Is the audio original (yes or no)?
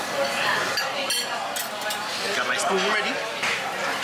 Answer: yes